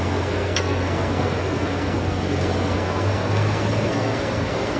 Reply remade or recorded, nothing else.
remade